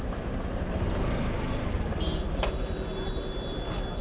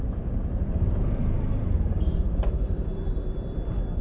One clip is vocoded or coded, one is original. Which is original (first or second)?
first